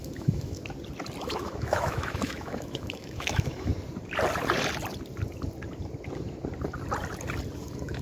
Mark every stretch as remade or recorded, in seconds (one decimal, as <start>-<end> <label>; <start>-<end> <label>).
0.0-0.6 remade; 0.6-1.2 recorded; 1.2-3.7 remade; 3.7-7.6 recorded; 7.6-8.0 remade